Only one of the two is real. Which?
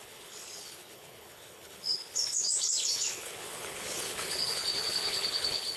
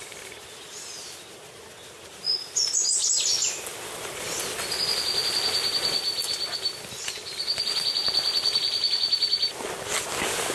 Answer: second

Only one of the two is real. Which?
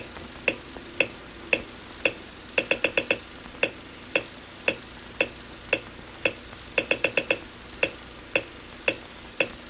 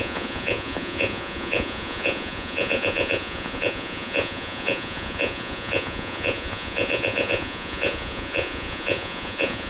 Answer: first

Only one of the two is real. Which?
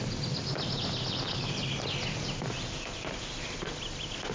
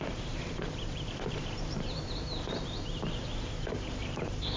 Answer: first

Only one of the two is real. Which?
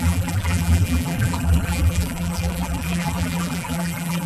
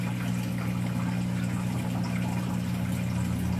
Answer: second